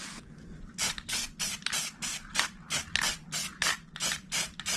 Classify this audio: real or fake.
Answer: real